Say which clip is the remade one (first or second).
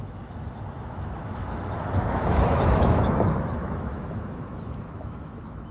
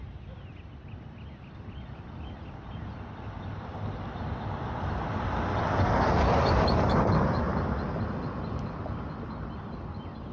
first